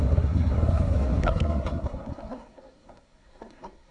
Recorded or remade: remade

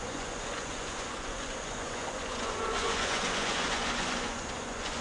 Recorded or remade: remade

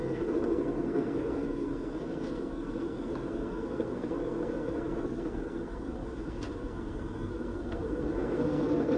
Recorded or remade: remade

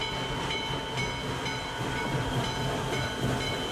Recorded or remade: recorded